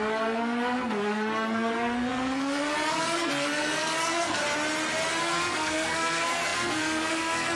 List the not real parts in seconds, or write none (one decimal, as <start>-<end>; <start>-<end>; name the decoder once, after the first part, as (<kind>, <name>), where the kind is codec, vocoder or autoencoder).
0.0-4.4 (codec, SNAC); 5.2-7.6